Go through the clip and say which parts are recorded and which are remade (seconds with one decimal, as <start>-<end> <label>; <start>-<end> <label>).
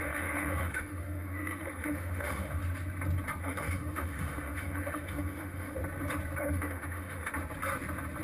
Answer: 0.0-2.6 remade; 2.6-3.4 recorded; 3.4-5.8 remade; 5.8-6.4 recorded; 6.4-7.3 remade; 7.3-8.2 recorded